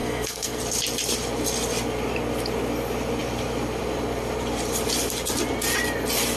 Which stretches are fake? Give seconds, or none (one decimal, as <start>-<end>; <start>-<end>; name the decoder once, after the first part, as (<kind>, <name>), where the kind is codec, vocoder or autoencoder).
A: 0.0-0.6 (codec, SNAC)